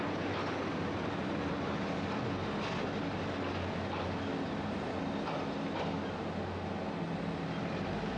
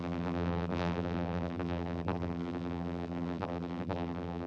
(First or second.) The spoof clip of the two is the second